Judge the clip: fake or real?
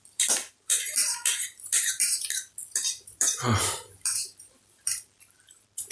fake